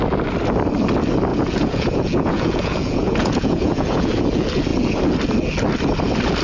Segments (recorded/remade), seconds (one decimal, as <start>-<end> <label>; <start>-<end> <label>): 0.0-1.3 recorded; 1.3-4.1 remade; 4.1-6.4 recorded